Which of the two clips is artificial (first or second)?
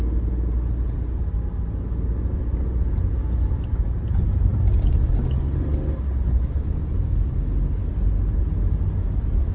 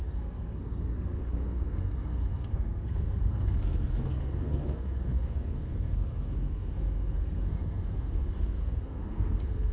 second